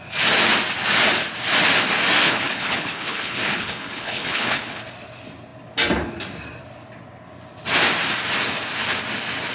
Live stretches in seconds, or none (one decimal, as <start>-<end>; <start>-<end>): 0.0-2.2; 4.8-9.5